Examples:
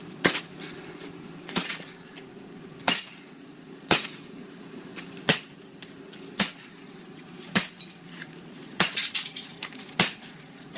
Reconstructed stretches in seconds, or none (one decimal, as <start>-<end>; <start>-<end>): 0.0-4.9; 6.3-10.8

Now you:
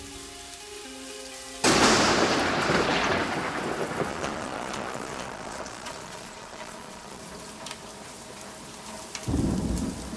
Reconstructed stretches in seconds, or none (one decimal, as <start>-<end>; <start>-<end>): 4.1-7.2

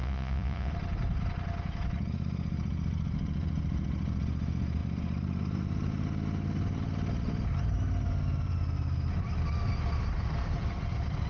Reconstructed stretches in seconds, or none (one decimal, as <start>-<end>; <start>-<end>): 0.0-0.7

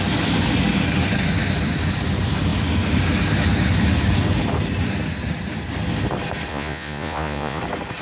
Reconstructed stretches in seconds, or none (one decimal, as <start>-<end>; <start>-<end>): 6.5-7.6

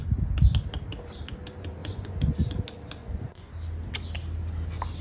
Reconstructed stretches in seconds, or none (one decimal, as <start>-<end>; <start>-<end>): 1.8-2.3; 3.0-3.5

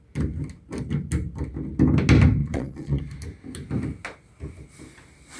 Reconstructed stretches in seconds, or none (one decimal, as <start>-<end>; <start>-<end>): 2.4-3.0

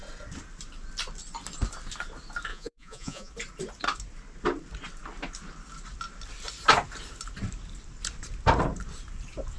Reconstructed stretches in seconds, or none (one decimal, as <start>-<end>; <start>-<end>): 2.5-3.3